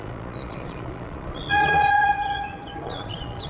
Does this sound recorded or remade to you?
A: remade